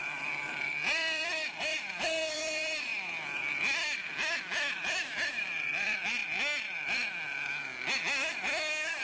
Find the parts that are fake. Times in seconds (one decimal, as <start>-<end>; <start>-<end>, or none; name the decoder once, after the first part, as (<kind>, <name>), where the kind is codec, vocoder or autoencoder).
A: 0.0-2.9 (vocoder, BigVGAN v2); 3.5-6.2